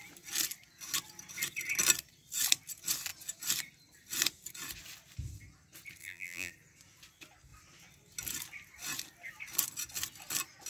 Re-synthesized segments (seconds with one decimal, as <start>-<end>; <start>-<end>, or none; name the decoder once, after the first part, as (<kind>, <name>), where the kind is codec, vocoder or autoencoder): 6.0-6.5 (vocoder, BigVGAN v2)